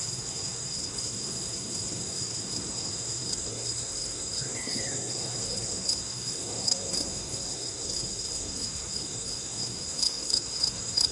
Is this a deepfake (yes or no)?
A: yes